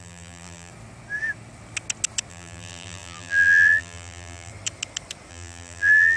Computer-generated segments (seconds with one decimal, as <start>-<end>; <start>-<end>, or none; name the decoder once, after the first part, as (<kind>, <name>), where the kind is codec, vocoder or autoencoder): 0.0-0.7 (vocoder, BigVGAN v2); 2.3-4.5; 5.3-6.2